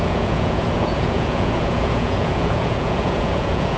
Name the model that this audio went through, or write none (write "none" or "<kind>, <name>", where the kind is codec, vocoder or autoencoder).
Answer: vocoder, Vocos